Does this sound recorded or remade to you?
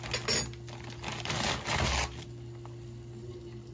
recorded